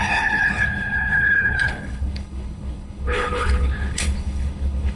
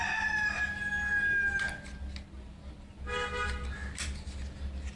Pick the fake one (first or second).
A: first